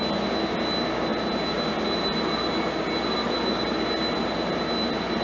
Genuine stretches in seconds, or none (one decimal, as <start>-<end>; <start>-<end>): 0.0-5.2